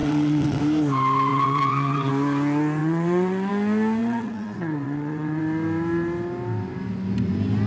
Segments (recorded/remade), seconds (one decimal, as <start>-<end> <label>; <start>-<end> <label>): 0.0-0.6 remade; 0.6-1.3 recorded; 1.3-2.1 remade; 2.1-2.8 recorded; 2.8-3.5 remade; 3.5-4.0 recorded; 4.0-5.4 remade; 5.4-7.7 recorded